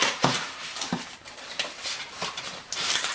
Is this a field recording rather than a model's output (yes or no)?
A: no